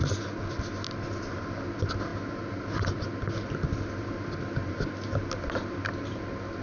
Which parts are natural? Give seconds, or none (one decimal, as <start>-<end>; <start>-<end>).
0.0-6.6